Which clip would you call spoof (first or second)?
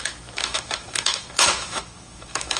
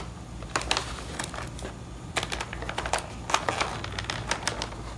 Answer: first